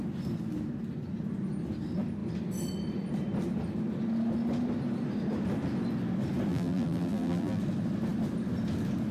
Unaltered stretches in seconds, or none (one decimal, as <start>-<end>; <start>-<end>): 0.0-6.5; 7.6-9.1